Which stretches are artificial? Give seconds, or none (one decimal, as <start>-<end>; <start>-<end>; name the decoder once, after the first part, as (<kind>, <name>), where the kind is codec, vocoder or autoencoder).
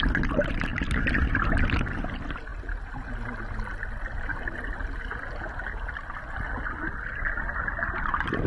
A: none